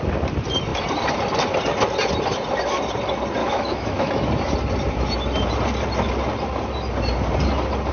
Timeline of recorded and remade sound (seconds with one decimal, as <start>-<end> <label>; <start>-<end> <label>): 0.0-3.4 recorded; 3.4-4.3 remade; 4.3-7.9 recorded